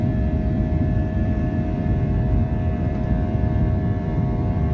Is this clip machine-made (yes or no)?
yes